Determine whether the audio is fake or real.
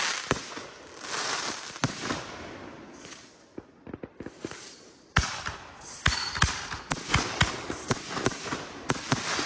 real